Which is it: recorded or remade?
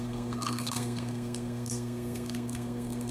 remade